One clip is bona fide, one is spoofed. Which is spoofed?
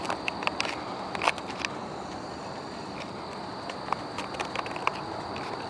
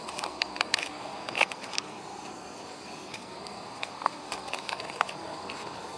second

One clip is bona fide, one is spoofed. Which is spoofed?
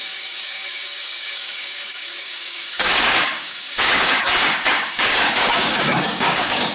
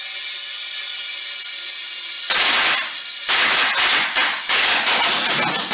first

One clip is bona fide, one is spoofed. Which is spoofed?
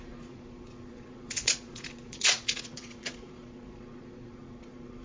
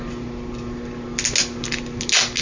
first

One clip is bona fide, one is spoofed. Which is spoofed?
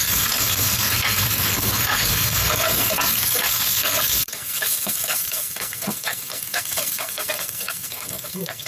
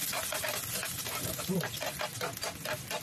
first